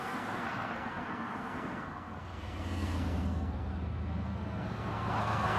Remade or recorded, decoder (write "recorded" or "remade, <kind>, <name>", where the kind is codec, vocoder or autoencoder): remade, codec, SNAC